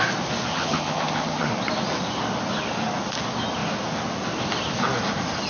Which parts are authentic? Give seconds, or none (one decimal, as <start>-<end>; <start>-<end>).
0.0-0.5; 1.5-5.5